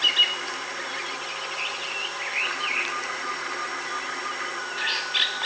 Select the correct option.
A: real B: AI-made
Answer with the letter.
A